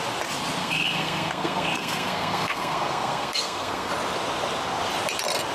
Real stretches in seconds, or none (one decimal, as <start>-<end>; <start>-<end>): 0.0-0.6; 3.9-5.5